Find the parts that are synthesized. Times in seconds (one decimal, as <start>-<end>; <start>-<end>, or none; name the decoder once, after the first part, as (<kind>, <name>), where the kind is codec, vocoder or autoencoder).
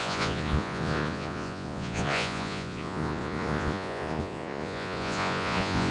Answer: 0.0-5.9 (vocoder, Vocos)